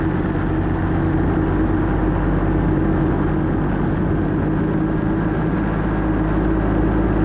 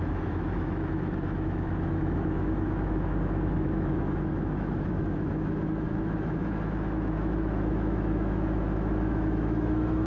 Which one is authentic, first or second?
first